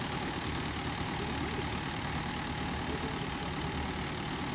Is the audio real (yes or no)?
yes